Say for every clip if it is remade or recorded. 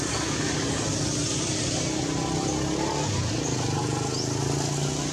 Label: recorded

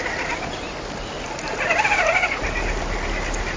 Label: recorded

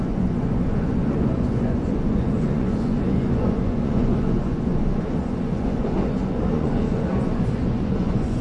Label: remade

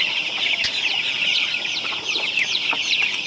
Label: remade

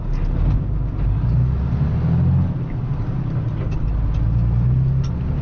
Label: recorded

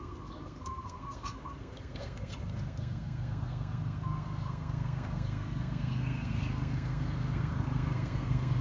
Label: remade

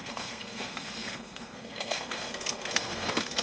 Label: remade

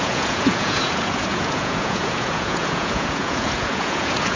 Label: remade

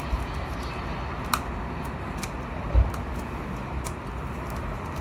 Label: recorded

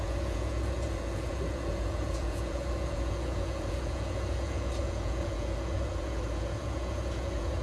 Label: remade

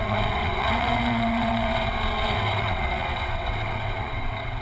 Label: remade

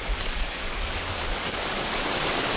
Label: remade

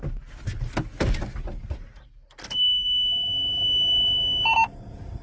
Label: recorded